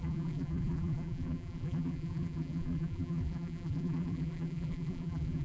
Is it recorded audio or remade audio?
remade